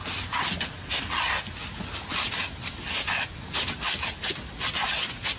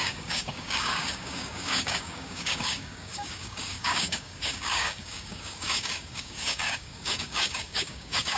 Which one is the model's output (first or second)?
second